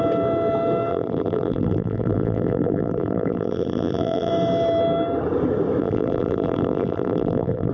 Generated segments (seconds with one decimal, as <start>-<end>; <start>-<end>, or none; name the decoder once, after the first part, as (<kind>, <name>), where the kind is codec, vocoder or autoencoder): 0.9-4.3 (vocoder, BigVGAN v2); 5.8-7.7